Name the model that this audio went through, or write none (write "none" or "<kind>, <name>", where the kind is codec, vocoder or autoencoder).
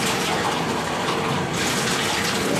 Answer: none